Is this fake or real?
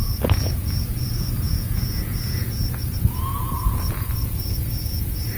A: fake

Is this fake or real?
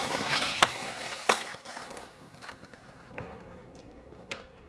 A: fake